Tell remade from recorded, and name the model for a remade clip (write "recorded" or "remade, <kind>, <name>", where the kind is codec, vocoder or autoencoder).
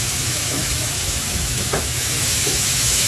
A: remade, autoencoder, DAC-VAE